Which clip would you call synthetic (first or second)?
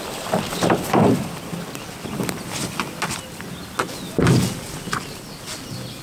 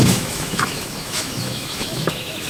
second